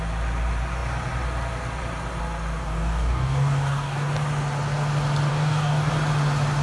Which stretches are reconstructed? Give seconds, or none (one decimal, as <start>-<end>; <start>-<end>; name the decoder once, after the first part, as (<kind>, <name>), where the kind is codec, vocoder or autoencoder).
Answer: 2.6-4.1 (codec, DAC); 5.3-5.9

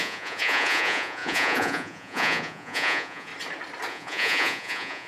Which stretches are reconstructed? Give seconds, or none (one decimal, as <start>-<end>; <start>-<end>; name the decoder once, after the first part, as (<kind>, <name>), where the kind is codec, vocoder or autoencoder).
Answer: 0.0-3.3 (vocoder, Vocos); 3.9-5.1

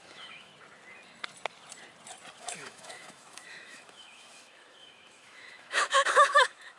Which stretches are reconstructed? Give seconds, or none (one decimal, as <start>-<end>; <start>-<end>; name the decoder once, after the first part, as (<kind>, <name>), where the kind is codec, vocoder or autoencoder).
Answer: 0.0-0.5 (autoencoder, DAC-VAE); 2.4-6.8

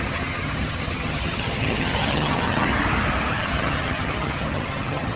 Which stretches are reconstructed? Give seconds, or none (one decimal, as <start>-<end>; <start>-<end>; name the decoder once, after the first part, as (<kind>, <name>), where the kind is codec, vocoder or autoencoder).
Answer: 0.0-2.7 (vocoder, HiFi-GAN); 3.3-5.2

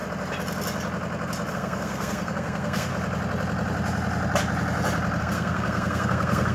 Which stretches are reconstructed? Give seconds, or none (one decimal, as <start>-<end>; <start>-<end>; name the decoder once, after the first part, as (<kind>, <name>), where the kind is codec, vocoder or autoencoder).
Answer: 1.5-2.9 (codec, SNAC); 5.2-6.5

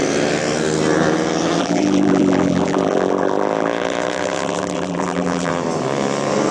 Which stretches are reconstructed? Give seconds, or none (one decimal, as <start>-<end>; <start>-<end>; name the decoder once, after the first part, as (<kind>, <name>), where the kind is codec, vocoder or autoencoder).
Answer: 1.6-5.5 (vocoder, BigVGAN v2)